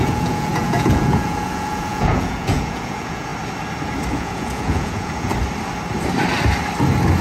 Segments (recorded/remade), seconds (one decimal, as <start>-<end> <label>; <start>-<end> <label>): 0.0-3.3 remade; 3.3-4.1 recorded; 4.1-5.3 remade; 5.3-7.2 recorded